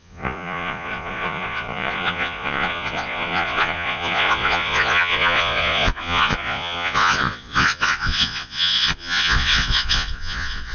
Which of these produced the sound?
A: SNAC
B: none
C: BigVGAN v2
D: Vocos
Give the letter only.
D